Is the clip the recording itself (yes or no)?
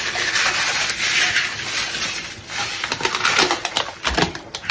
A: yes